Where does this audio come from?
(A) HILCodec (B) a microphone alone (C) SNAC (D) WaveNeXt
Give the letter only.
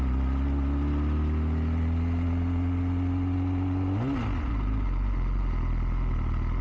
B